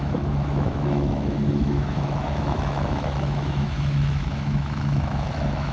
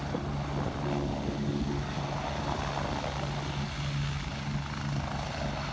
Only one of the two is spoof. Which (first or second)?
first